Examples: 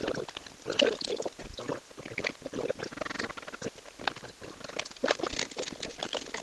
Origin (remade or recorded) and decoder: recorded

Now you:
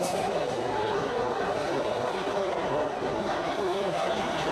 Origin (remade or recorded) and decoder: remade, codec, SNAC